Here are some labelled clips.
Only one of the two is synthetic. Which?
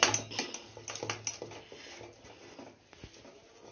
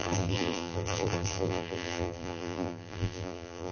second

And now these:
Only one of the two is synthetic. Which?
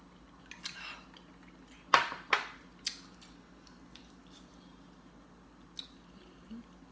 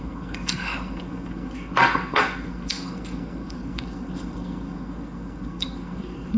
second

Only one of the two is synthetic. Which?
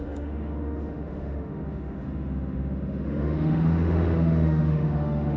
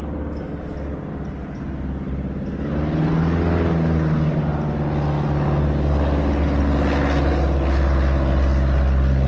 first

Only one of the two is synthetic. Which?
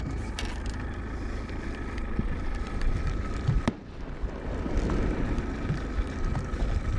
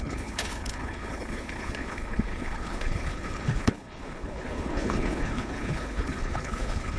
second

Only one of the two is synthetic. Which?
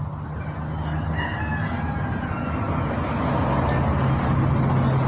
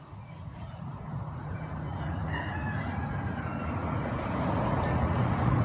second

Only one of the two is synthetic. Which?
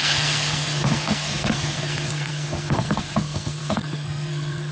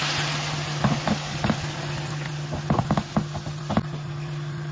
first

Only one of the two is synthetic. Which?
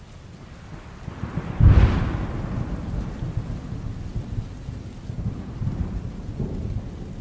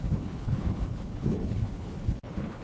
second